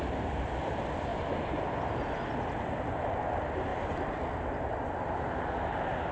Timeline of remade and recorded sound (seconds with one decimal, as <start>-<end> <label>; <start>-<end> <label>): 0.0-6.1 recorded